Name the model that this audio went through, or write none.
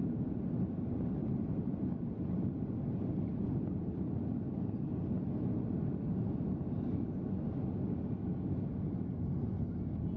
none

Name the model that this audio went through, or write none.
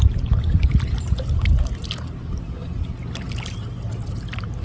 none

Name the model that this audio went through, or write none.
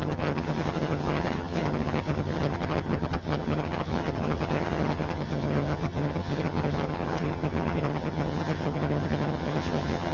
vocoder, HiFi-GAN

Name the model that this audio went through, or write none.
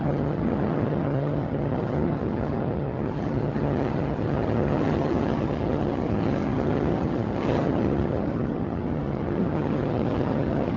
vocoder, HiFi-GAN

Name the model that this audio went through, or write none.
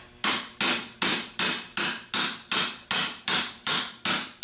none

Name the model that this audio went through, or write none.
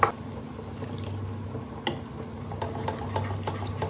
none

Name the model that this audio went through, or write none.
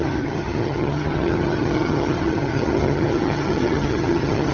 vocoder, HiFi-GAN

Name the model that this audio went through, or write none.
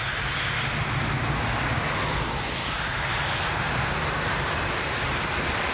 none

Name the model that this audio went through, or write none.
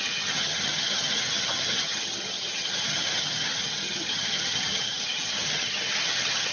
vocoder, HiFi-GAN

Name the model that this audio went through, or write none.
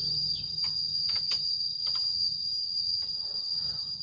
vocoder, HiFi-GAN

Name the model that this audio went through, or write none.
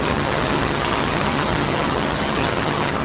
vocoder, HiFi-GAN